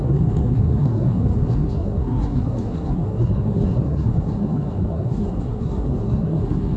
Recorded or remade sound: remade